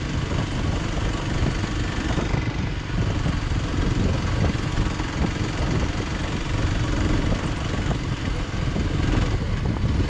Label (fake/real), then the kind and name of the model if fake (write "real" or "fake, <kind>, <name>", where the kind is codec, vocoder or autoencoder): real